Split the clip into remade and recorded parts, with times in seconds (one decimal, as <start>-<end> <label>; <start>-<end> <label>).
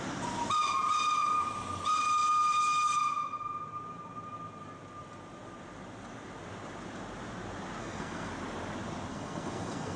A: 0.0-7.8 recorded; 7.8-8.3 remade; 8.3-9.1 recorded; 9.1-10.0 remade